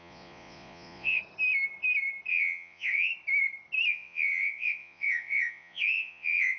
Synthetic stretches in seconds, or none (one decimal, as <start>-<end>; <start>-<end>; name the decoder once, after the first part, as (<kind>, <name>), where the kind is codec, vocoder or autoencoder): 0.0-1.2 (vocoder, Vocos); 2.3-3.1; 3.9-6.6